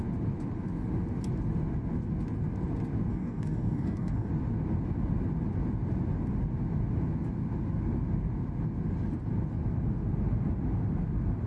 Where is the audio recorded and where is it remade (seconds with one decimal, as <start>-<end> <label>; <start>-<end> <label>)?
0.0-3.1 recorded; 3.1-4.3 remade; 4.3-11.5 recorded